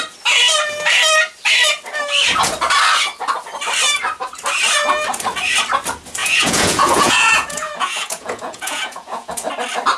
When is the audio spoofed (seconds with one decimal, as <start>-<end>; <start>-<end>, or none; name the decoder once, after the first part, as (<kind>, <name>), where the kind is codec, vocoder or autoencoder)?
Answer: 6.2-9.5 (vocoder, Vocos)